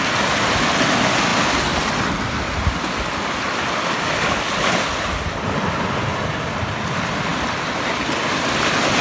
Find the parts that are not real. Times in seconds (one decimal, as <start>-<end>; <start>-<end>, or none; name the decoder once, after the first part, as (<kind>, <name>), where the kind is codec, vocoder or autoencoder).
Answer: none